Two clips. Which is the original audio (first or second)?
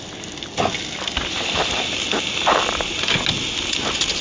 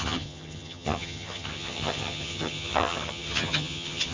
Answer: first